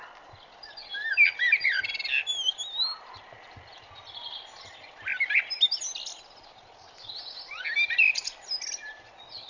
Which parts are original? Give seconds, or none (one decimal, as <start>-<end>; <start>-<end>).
0.0-9.5